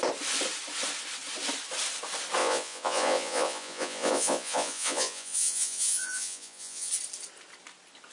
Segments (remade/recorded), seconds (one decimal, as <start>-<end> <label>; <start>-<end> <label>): 0.0-2.4 recorded; 2.4-6.9 remade; 6.9-8.1 recorded